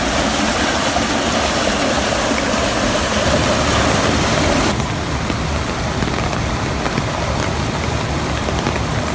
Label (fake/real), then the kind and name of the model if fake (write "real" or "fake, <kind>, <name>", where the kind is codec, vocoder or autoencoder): real